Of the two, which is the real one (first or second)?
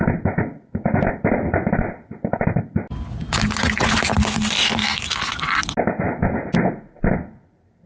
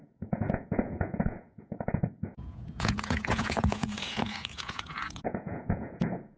first